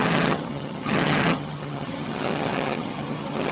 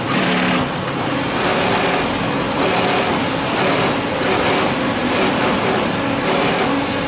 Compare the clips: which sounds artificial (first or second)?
first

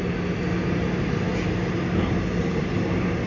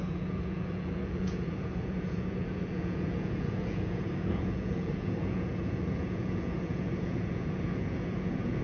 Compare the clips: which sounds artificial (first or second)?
second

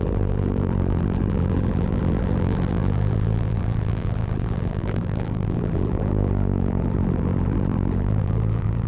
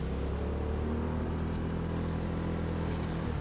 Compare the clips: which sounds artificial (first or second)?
first